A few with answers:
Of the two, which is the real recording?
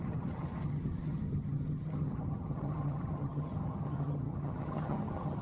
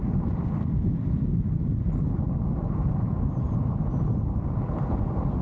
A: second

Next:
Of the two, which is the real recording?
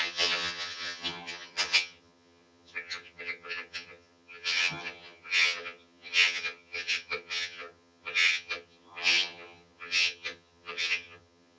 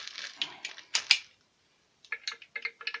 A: second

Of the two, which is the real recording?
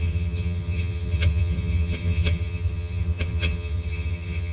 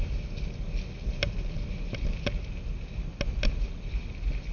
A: second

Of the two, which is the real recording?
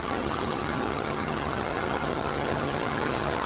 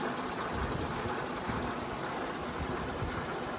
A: second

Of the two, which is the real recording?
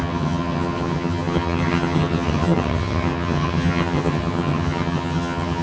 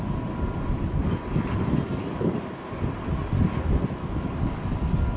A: second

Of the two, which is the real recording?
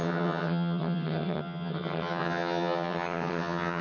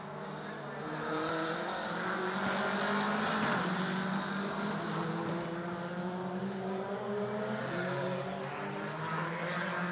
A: second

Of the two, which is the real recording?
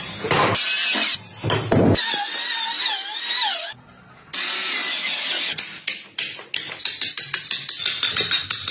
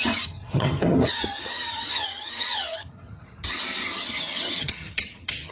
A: first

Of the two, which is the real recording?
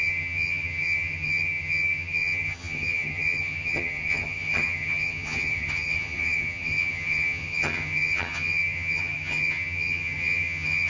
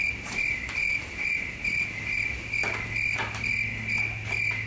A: second